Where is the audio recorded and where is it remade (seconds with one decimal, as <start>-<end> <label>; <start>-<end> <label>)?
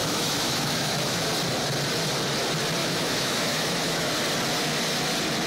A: 0.0-1.2 remade; 1.2-2.8 recorded; 2.8-4.1 remade; 4.1-5.5 recorded